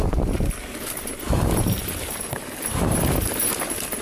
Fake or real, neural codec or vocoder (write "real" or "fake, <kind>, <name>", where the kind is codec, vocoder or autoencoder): fake, vocoder, BigVGAN v2